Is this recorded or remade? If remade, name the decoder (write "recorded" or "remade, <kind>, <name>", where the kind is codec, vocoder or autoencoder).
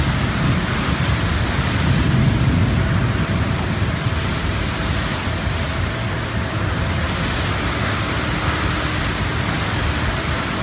recorded